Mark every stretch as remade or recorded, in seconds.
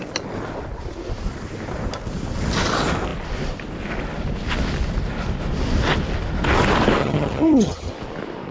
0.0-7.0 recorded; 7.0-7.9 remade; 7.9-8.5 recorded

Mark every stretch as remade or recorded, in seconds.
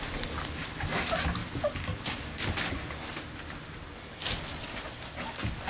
0.0-5.7 recorded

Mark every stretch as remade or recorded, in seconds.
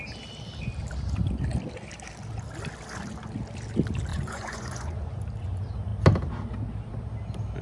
0.0-4.1 recorded; 4.1-5.2 remade; 5.2-7.6 recorded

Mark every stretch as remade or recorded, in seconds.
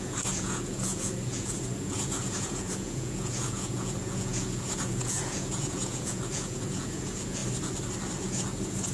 0.0-7.4 remade; 7.4-8.2 recorded; 8.2-8.9 remade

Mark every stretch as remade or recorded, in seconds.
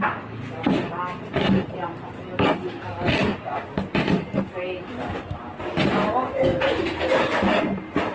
0.0-8.1 recorded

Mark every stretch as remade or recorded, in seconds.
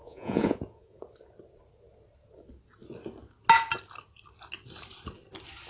0.0-1.0 remade; 1.0-5.7 recorded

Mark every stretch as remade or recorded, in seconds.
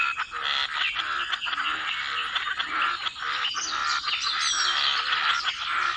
0.0-6.0 recorded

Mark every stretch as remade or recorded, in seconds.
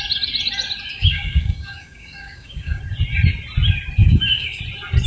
0.0-0.9 recorded; 0.9-2.8 remade; 2.8-4.0 recorded; 4.0-4.6 remade; 4.6-5.1 recorded